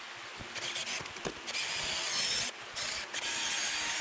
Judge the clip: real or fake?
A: real